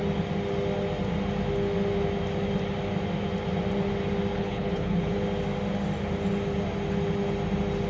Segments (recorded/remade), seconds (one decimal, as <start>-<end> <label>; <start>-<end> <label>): 0.0-4.3 recorded; 4.3-5.1 remade; 5.1-7.9 recorded

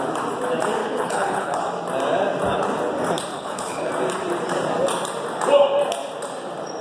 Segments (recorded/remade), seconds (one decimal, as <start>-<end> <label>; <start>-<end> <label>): 0.0-0.8 recorded; 0.8-1.6 remade; 1.6-3.3 recorded; 3.3-3.9 remade; 3.9-6.8 recorded

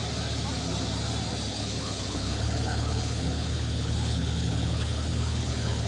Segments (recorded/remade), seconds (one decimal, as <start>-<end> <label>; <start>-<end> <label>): 0.0-1.5 recorded; 1.5-5.9 remade

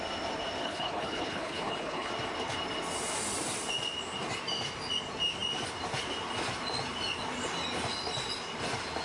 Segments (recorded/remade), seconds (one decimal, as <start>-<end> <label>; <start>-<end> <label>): 0.0-0.6 recorded; 0.6-2.1 remade; 2.1-9.0 recorded

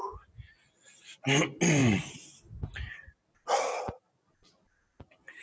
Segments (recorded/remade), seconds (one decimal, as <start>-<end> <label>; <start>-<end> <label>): 0.0-5.4 recorded

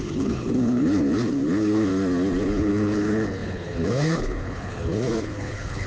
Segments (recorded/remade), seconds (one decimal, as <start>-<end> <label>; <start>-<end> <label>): 0.0-1.9 remade; 1.9-2.4 recorded; 2.4-5.9 remade

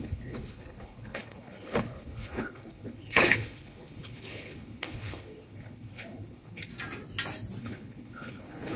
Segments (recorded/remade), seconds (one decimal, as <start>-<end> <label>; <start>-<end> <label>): 0.0-6.7 remade; 6.7-7.6 recorded; 7.6-8.8 remade

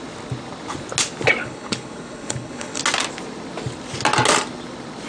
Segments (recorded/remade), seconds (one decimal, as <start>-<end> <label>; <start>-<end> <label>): 0.0-1.4 recorded; 1.4-2.8 remade; 2.8-5.1 recorded